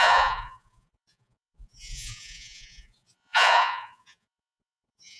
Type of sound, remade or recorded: remade